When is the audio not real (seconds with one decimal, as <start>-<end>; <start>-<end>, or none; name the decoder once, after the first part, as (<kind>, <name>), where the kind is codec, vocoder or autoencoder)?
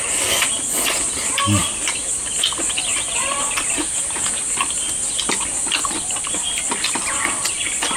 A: none